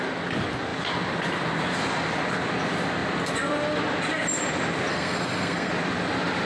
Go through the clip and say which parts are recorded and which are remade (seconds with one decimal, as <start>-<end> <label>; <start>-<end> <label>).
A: 0.0-4.9 recorded; 4.9-5.7 remade; 5.7-6.5 recorded